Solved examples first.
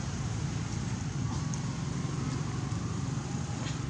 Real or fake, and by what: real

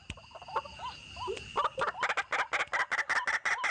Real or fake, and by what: real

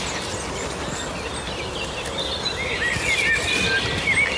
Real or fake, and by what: real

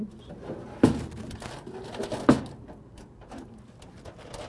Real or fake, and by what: real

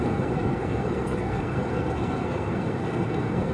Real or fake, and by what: fake, codec, SNAC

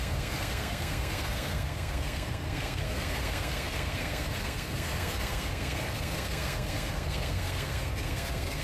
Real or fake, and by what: fake, codec, SNAC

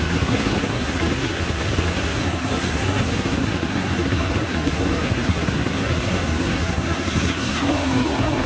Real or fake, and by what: fake, codec, SNAC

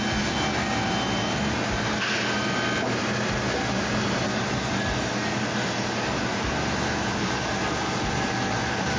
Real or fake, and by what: real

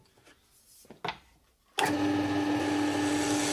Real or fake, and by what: real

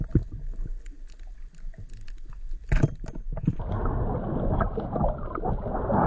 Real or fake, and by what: real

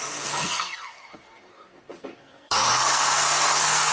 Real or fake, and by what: fake, codec, SNAC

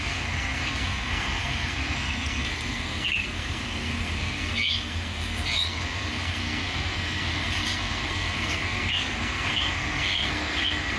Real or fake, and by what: fake, codec, SNAC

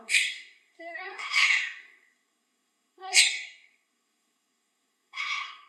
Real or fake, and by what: fake, codec, SNAC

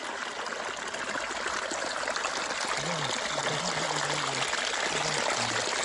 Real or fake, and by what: real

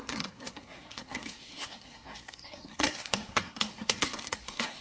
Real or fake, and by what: fake, codec, SNAC